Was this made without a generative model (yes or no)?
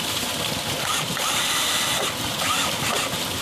yes